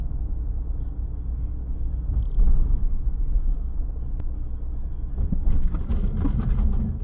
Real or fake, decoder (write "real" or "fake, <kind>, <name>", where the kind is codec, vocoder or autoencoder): real